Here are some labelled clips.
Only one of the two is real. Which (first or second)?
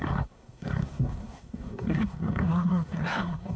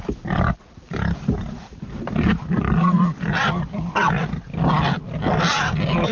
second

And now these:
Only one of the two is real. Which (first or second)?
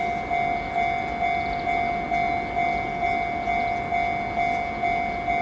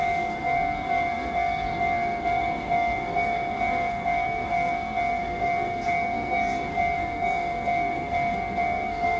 first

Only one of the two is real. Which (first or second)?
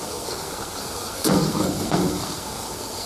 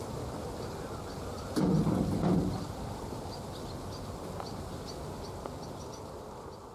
second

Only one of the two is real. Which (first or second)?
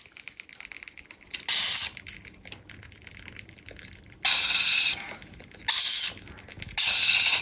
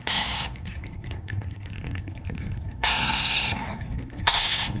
first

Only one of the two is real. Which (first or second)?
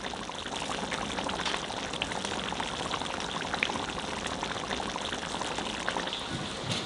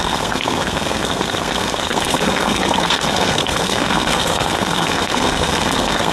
first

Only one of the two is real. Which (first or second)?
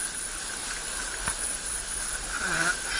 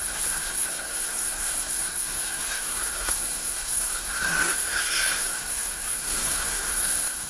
first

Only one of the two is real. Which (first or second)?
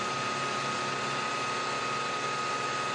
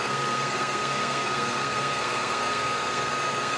first